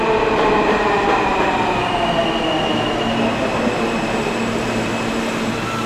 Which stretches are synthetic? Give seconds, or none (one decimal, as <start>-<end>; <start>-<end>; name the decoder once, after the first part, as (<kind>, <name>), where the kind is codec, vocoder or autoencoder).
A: none